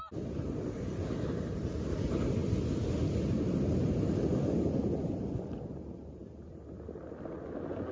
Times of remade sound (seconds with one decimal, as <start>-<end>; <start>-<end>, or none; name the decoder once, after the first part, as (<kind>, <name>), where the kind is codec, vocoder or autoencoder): none